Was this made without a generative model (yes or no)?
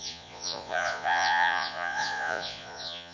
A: no